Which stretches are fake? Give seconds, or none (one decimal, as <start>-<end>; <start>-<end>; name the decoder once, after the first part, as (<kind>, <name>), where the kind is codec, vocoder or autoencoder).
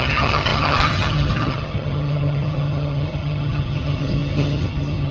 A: 0.0-5.1 (vocoder, HiFi-GAN)